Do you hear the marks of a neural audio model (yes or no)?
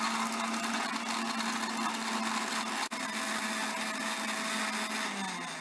no